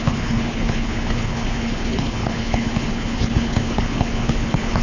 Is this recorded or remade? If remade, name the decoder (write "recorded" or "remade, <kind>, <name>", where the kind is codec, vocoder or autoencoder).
remade, codec, HILCodec